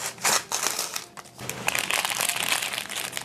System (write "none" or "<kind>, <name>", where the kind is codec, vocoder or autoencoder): none